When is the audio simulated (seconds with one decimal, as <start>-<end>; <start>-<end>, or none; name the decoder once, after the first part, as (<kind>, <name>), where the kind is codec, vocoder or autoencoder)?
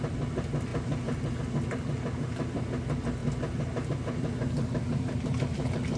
0.7-1.4 (vocoder, BigVGAN v2)